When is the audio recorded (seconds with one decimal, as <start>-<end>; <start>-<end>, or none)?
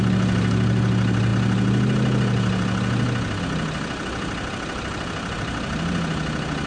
0.0-6.7